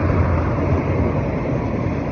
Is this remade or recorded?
recorded